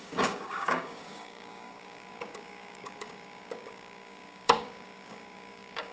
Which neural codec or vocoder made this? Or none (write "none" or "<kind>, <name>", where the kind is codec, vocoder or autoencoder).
codec, DAC